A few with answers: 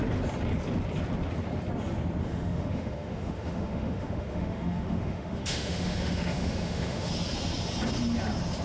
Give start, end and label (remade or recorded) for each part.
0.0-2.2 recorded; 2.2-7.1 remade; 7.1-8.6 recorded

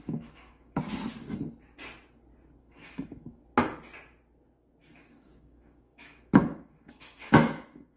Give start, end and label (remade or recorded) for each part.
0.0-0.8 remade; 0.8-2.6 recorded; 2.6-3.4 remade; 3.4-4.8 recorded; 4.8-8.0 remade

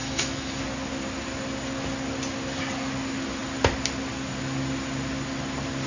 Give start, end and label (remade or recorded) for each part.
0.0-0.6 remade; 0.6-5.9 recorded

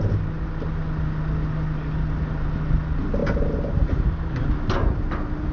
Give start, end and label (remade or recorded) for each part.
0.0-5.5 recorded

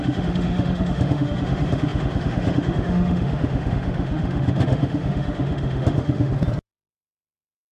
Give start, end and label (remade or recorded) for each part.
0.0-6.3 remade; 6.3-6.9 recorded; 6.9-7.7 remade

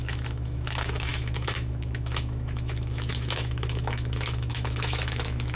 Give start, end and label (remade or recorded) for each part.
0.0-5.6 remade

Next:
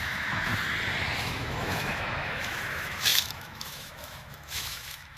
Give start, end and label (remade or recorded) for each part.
0.0-0.5 remade; 0.5-1.2 recorded; 1.2-5.2 remade